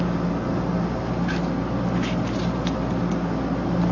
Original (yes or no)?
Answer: yes